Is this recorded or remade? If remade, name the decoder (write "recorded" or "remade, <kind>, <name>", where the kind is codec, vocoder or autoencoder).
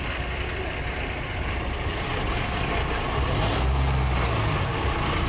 recorded